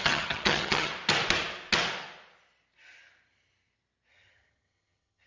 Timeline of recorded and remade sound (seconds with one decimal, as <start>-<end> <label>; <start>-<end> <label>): 0.0-0.9 remade; 0.9-4.1 recorded; 4.1-5.3 remade